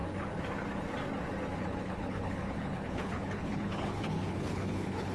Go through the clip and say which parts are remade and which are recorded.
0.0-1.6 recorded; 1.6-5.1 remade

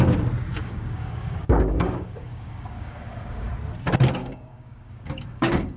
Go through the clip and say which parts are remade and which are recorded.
0.0-0.5 recorded; 0.5-3.5 remade; 3.5-4.2 recorded; 4.2-5.8 remade